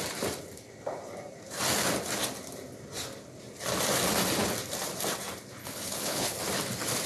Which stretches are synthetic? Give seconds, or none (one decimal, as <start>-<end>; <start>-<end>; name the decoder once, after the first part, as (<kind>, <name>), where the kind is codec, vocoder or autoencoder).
5.6-6.4 (codec, HILCodec)